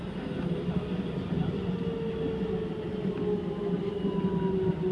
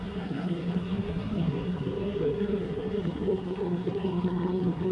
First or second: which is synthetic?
second